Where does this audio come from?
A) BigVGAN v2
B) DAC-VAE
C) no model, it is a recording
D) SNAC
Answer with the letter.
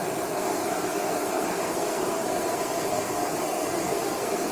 D